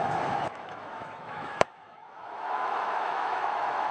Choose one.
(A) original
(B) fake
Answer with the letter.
B